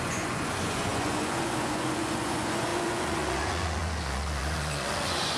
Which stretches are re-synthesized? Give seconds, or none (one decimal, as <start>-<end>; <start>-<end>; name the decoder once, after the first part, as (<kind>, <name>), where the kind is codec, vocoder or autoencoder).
0.0-5.4 (vocoder, Vocos)